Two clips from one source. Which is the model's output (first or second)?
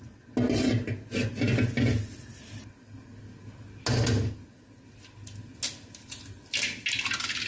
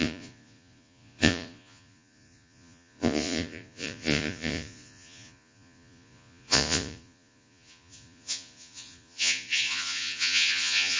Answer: second